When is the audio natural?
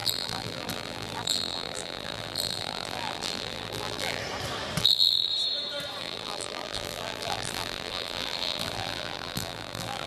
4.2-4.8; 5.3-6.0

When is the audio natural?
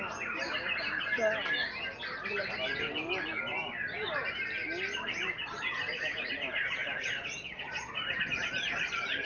0.0-7.2; 7.9-9.2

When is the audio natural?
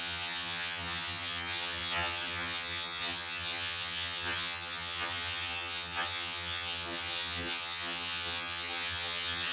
none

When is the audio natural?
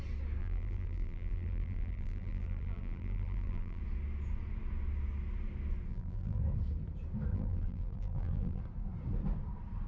0.0-0.4; 3.8-5.9; 6.4-7.3; 8.6-9.9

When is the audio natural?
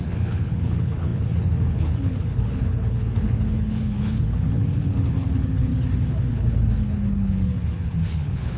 5.7-6.3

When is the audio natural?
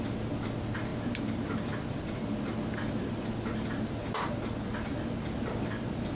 0.0-6.1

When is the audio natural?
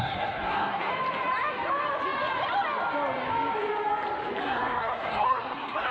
0.9-4.4